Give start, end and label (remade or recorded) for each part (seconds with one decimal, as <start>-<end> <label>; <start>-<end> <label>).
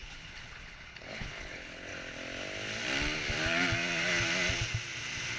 0.0-1.9 remade; 1.9-5.4 recorded